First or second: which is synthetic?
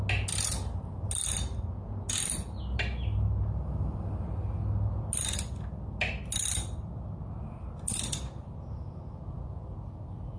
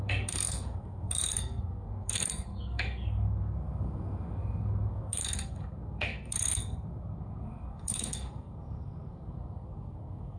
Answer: second